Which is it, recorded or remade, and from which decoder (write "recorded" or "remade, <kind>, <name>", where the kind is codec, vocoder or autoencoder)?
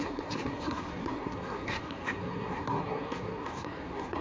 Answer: remade, codec, SNAC